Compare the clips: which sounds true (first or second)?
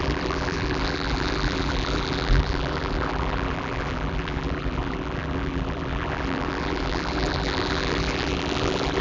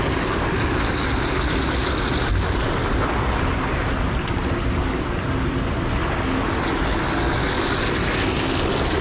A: second